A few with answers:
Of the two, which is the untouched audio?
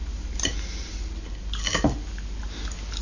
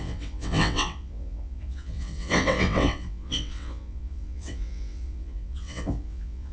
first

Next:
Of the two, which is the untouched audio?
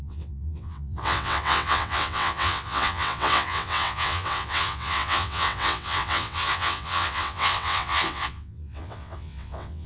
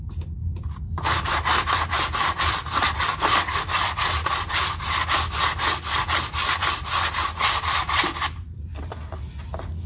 second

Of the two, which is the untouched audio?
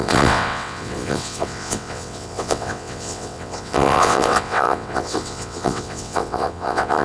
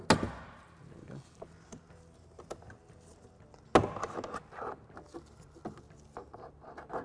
second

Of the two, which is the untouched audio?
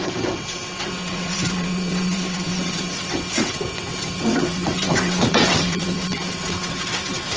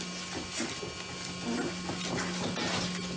second